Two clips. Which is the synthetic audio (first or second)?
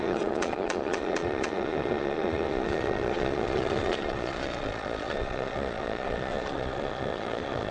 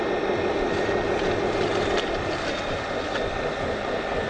first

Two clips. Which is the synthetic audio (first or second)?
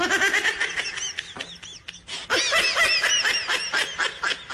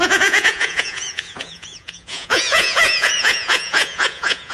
second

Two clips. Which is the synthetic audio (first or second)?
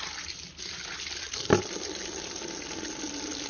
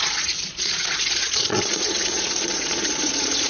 second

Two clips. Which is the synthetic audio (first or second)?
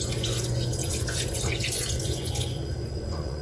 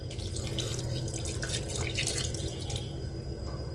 first